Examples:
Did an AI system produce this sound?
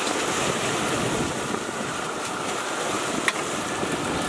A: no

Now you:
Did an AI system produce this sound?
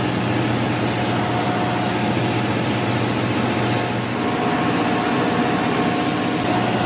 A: no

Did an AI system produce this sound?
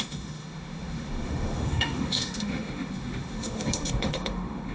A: yes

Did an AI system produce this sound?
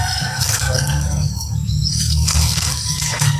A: yes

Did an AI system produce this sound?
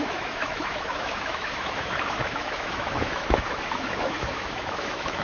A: yes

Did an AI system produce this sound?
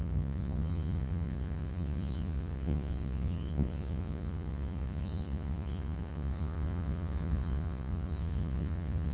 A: yes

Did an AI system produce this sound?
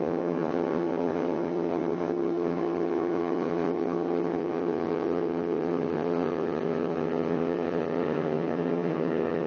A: yes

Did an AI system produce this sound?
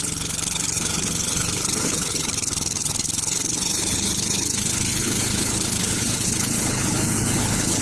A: yes